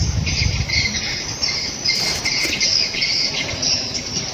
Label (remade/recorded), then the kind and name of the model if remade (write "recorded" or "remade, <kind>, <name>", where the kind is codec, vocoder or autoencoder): recorded